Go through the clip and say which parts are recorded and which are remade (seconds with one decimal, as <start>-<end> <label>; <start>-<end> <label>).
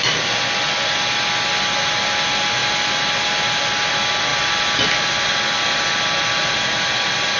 0.0-7.4 recorded